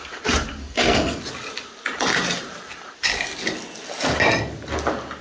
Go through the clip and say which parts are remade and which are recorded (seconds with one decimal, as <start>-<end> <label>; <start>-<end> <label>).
0.0-0.6 recorded; 0.6-1.2 remade; 1.2-5.2 recorded